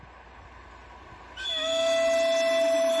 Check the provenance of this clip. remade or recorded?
recorded